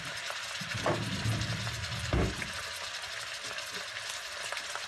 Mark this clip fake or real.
real